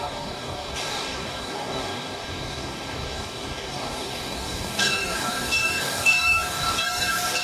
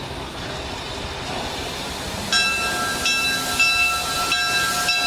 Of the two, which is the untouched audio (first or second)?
second